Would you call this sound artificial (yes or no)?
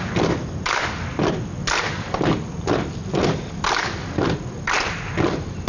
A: no